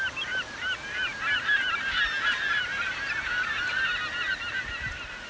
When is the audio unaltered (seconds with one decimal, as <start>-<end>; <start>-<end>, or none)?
0.0-5.3